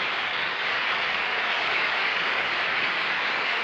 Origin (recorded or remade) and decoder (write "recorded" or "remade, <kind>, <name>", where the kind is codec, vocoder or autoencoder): remade, codec, DAC